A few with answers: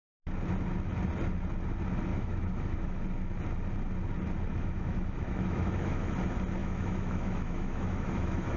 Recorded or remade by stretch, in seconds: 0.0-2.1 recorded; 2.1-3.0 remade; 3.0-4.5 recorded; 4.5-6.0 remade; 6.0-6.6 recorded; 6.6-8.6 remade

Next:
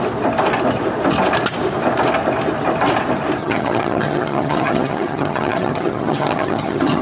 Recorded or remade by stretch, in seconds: 0.0-3.4 recorded; 3.4-7.0 remade

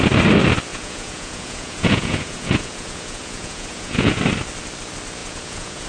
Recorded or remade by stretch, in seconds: 0.0-0.7 recorded; 0.7-4.2 remade; 4.2-5.2 recorded; 5.2-5.9 remade